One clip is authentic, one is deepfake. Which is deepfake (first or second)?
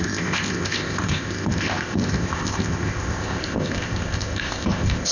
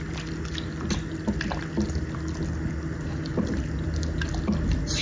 first